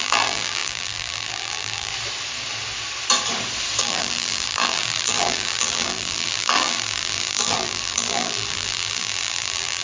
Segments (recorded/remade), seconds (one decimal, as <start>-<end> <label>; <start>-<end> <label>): 0.0-1.9 remade; 1.9-3.8 recorded; 3.8-9.8 remade